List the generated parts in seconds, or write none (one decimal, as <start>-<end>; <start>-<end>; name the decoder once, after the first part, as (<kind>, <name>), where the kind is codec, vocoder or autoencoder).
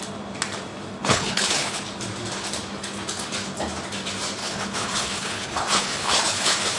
1.0-1.8 (codec, HILCodec); 4.4-6.8